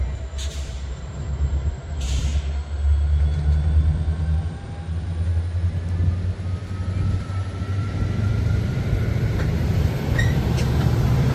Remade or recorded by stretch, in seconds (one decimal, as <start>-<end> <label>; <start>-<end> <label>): 0.0-2.3 remade; 2.3-7.3 recorded; 7.3-11.3 remade